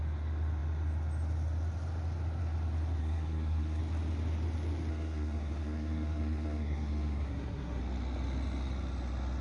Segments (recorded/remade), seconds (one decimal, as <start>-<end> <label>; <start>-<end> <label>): 0.0-3.0 recorded; 3.0-3.8 remade; 3.8-4.9 recorded; 4.9-7.8 remade; 7.8-9.4 recorded